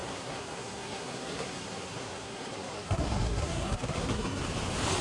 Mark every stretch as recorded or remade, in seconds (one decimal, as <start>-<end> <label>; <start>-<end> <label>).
0.0-4.4 remade; 4.4-5.0 recorded